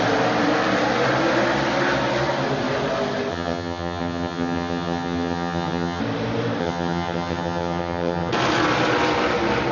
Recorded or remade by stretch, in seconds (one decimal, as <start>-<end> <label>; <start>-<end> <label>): 0.0-3.3 recorded; 3.3-6.0 remade; 6.0-6.6 recorded; 6.6-8.3 remade; 8.3-9.7 recorded